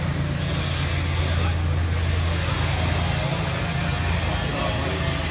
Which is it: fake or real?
real